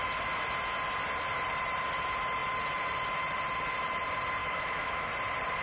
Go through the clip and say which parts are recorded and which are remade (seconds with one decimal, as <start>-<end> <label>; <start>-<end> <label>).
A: 0.0-4.4 recorded; 4.4-5.1 remade; 5.1-5.6 recorded